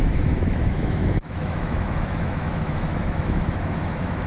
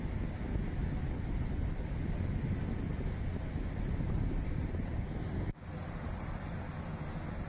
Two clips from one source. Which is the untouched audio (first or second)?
second